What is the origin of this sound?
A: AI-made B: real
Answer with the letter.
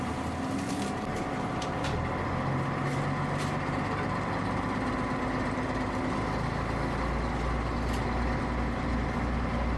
B